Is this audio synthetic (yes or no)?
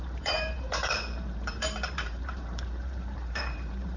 yes